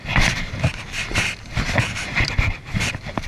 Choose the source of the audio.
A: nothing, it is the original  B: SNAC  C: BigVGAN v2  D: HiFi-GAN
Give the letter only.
C